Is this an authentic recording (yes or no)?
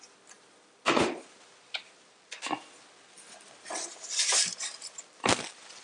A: no